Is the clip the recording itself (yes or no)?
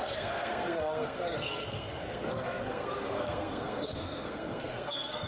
no